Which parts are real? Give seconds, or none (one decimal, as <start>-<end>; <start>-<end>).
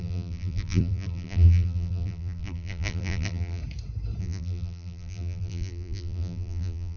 3.6-4.2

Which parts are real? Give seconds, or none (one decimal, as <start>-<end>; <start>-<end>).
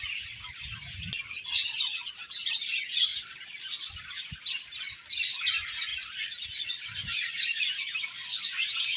0.0-3.1; 4.0-5.9; 8.4-9.0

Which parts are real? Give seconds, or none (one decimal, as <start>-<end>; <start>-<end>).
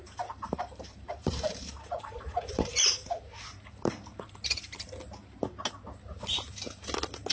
2.7-7.3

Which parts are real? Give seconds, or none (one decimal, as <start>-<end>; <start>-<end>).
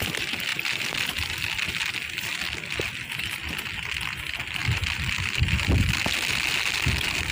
0.0-0.5; 1.5-4.6; 5.4-7.3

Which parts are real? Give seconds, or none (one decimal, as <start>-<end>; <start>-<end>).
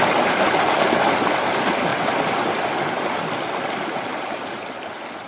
0.0-4.1; 4.7-5.3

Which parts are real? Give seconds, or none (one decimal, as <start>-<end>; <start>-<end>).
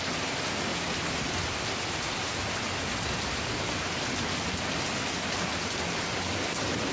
0.0-6.9